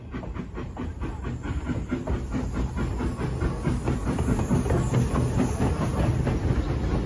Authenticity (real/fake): real